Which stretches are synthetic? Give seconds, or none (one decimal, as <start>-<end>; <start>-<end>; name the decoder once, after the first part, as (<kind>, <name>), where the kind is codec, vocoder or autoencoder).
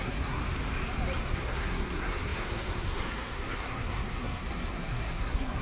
0.0-0.4 (codec, SNAC); 1.2-5.6